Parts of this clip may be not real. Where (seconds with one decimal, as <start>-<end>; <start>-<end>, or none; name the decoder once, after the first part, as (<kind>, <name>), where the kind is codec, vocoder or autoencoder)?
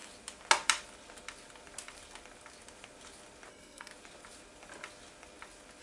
3.5-3.9 (codec, SNAC)